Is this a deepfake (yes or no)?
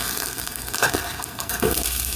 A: yes